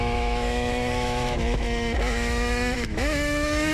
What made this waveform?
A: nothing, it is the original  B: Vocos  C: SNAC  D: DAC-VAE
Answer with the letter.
D